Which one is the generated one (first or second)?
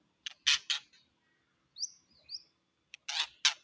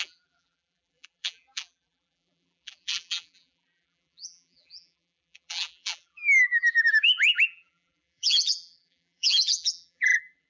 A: second